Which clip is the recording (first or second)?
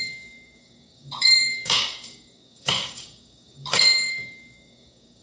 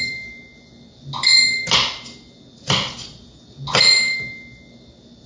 second